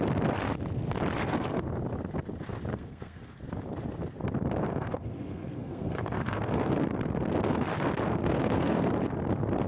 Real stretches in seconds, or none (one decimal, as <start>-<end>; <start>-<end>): 0.0-1.2; 1.7-2.7; 3.3-4.7; 6.7-8.2; 8.8-9.7